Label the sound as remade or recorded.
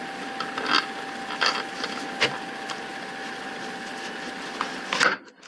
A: recorded